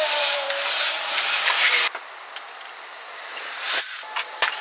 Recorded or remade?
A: remade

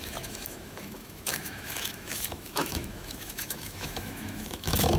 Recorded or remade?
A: remade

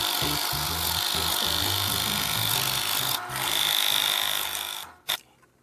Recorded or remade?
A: recorded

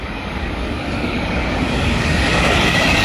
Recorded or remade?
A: remade